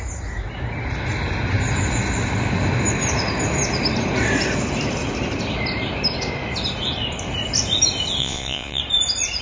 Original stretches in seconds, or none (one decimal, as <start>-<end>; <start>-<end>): 0.0-8.2; 8.8-9.4